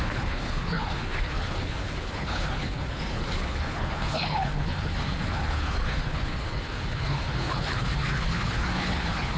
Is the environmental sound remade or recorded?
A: remade